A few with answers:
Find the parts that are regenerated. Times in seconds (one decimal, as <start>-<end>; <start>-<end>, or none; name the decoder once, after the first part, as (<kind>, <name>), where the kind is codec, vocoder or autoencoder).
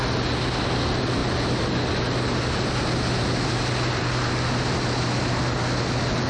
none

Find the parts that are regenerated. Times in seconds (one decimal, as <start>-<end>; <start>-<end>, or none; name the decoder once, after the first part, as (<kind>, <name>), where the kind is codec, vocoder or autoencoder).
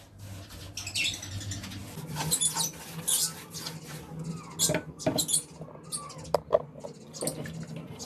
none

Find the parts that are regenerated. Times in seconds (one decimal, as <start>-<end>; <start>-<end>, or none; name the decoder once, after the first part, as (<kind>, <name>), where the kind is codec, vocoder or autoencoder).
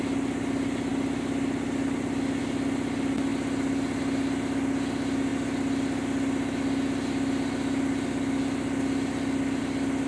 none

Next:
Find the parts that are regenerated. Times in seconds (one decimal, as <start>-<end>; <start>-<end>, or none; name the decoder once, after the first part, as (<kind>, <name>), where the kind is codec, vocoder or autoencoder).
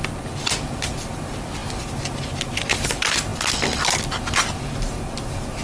none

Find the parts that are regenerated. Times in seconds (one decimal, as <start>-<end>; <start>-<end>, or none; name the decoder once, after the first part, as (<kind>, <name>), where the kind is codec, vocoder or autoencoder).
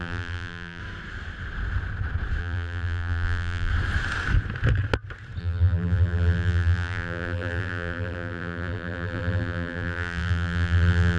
0.0-0.8 (vocoder, BigVGAN v2); 2.4-3.7; 5.4-11.2